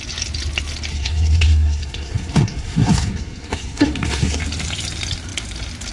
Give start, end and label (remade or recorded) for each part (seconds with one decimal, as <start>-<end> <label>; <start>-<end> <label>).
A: 0.0-0.9 recorded; 0.9-4.4 remade; 4.4-5.9 recorded